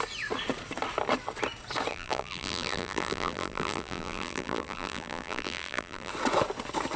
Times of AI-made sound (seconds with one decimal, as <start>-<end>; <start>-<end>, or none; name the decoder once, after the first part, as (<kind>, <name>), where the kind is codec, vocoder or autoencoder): 1.9-6.1 (vocoder, BigVGAN v2)